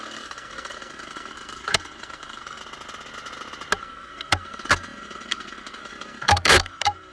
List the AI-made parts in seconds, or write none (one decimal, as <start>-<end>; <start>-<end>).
0.0-2.6; 3.8-7.1